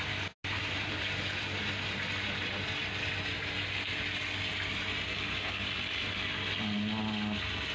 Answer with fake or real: real